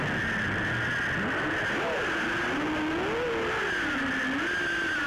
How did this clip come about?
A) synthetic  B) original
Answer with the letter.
B